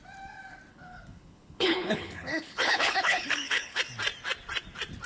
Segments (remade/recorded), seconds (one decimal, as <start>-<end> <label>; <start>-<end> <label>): 0.0-0.7 recorded; 0.7-3.8 remade; 3.8-5.1 recorded